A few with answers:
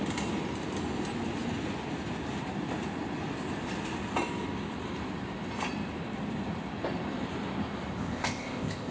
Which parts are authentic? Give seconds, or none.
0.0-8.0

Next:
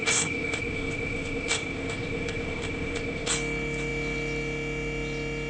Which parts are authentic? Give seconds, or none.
3.3-5.5

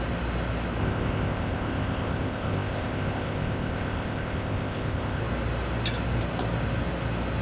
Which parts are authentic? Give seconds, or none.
0.0-0.8; 5.2-7.4